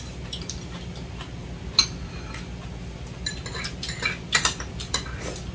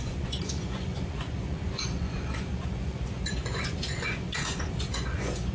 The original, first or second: first